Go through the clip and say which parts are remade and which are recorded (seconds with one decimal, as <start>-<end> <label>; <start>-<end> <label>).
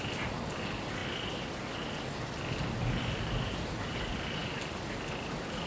0.0-5.7 recorded